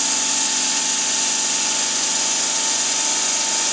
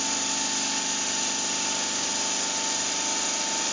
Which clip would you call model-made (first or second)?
first